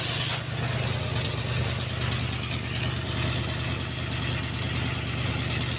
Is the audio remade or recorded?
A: recorded